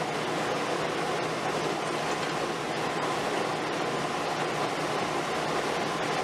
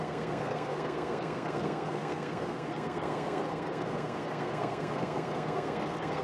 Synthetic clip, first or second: second